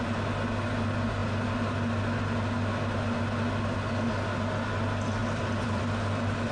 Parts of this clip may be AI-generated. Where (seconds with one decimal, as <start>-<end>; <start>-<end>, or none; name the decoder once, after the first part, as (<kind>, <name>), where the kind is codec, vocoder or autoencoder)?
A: 5.2-5.8 (vocoder, BigVGAN v2)